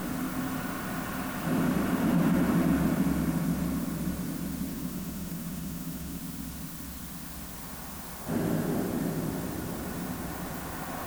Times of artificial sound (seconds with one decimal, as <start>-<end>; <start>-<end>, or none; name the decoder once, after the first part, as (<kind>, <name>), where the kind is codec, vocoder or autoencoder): 4.7-6.2 (autoencoder, DAC-VAE)